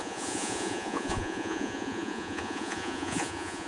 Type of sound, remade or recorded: remade